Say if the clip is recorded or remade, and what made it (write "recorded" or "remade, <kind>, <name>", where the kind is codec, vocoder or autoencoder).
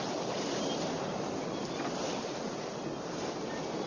recorded